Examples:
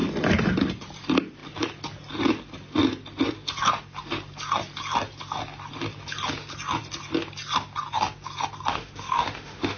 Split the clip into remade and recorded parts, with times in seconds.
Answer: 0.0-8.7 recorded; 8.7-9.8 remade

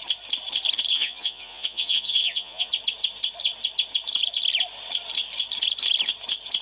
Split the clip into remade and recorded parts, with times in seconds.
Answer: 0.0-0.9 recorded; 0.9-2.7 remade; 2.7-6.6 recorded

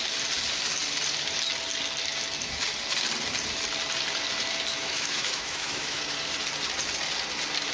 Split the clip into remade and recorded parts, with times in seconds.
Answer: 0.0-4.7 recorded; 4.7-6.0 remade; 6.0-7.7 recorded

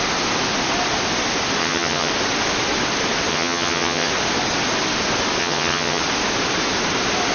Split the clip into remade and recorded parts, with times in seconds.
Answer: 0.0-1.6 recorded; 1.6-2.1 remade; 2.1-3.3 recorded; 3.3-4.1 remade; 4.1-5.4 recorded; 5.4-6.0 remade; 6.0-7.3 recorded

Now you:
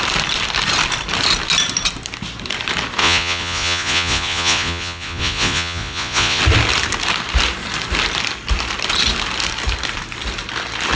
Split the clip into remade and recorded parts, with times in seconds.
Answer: 0.0-3.0 recorded; 3.0-6.4 remade; 6.4-11.0 recorded